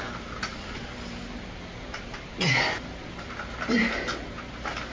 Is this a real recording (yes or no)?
yes